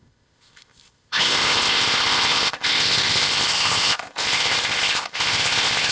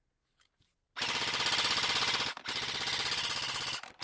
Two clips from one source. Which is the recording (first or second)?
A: second